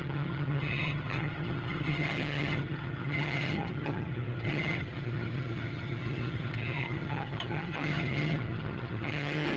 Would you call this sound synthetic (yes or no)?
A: yes